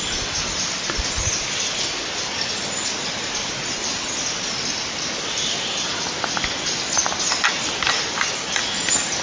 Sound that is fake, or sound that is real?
real